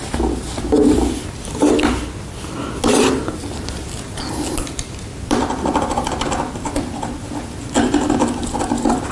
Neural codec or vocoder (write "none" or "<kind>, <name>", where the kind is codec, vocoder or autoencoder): none